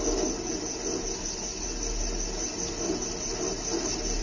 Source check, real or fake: real